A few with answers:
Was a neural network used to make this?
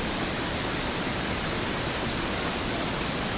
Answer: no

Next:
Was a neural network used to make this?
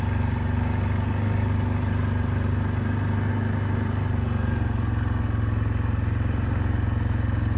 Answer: no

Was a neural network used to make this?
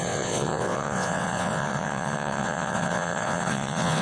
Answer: yes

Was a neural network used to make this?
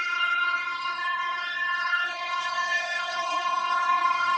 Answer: yes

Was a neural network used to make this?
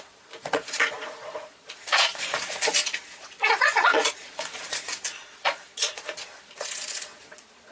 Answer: yes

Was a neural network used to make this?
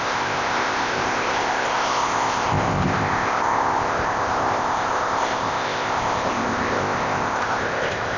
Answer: yes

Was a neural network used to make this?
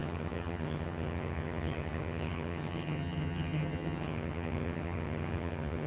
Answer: yes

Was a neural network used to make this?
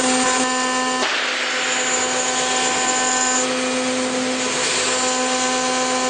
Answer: no